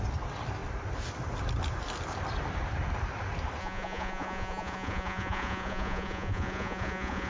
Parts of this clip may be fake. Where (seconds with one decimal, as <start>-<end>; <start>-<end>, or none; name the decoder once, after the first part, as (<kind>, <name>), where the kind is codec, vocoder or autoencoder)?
3.6-7.3 (vocoder, Vocos)